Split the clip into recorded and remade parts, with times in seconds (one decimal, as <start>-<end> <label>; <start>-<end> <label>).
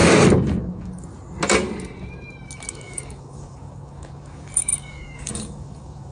0.0-0.6 recorded; 0.6-1.1 remade; 1.1-2.7 recorded; 2.7-6.1 remade